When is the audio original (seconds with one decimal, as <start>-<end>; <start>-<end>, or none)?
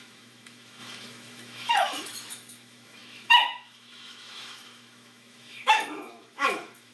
none